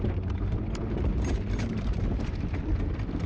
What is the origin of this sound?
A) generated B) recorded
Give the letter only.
A